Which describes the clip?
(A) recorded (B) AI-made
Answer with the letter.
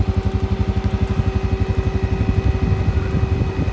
A